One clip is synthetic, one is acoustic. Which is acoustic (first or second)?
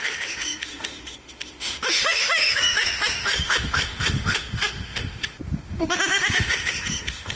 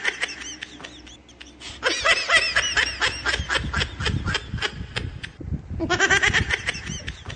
second